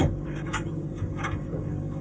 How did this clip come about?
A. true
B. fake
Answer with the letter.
B